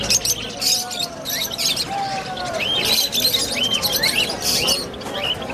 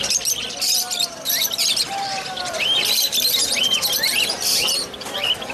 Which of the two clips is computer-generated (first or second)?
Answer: second